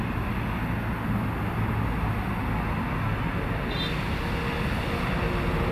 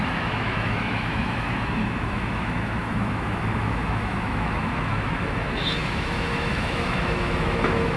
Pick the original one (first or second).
first